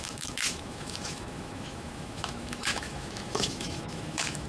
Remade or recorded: remade